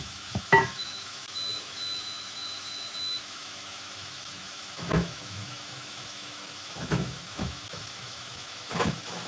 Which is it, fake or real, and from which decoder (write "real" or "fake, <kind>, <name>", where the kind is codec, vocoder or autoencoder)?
fake, autoencoder, DAC-VAE